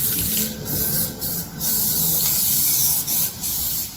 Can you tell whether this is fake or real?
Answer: real